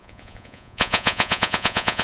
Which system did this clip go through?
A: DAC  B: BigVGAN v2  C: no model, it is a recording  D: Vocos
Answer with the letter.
D